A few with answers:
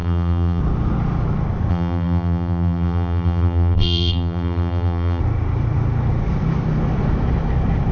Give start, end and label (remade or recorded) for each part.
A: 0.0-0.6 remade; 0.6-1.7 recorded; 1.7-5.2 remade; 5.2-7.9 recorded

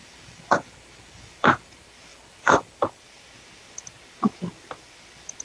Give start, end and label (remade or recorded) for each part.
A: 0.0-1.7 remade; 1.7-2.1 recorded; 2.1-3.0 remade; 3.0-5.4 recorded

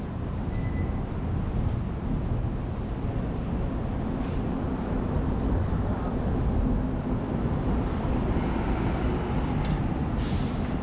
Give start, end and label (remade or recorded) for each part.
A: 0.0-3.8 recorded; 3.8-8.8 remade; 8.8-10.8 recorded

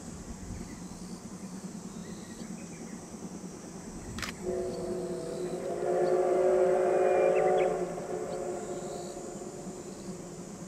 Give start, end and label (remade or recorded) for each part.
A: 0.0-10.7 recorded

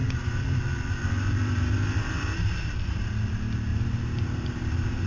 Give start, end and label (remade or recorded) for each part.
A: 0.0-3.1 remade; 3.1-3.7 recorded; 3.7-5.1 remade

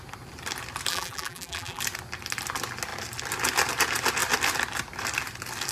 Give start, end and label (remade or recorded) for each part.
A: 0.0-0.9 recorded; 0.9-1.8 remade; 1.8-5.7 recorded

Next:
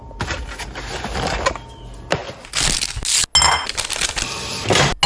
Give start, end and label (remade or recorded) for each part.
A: 0.0-5.1 recorded